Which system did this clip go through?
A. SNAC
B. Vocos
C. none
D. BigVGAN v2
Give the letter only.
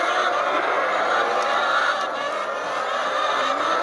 C